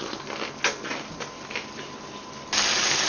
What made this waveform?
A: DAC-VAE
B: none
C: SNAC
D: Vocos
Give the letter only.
B